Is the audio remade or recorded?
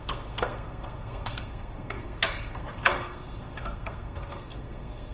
remade